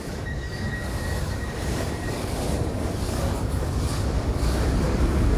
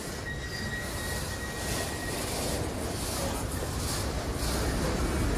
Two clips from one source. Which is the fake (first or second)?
first